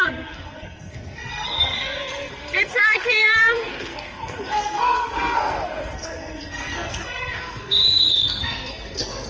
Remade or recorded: remade